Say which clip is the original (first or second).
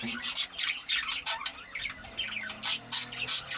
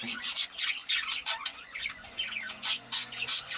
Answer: first